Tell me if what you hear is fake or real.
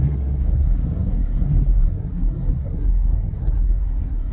fake